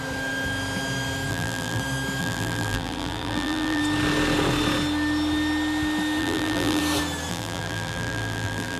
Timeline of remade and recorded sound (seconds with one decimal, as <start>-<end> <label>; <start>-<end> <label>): 0.0-1.3 recorded; 1.3-1.8 remade; 1.8-2.2 recorded; 2.2-3.8 remade; 3.8-6.2 recorded; 6.2-6.8 remade; 6.8-7.3 recorded; 7.3-8.8 remade